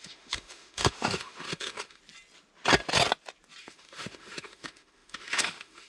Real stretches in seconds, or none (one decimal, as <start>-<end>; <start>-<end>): 2.0-3.6